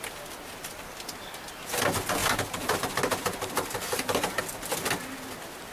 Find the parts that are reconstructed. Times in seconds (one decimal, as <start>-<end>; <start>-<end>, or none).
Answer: 2.2-4.4